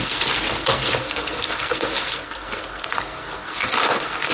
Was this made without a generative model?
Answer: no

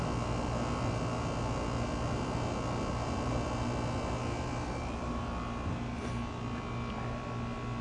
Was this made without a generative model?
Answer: yes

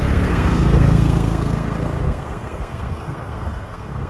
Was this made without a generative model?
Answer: no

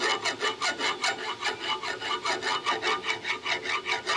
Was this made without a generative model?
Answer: yes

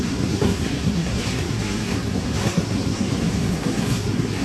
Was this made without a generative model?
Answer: no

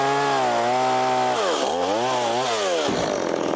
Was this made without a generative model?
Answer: yes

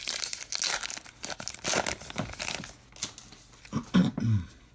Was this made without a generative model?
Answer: yes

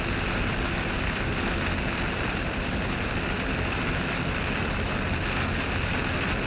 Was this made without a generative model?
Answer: yes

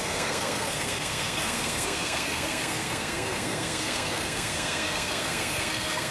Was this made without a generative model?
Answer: no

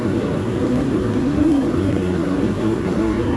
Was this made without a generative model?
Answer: no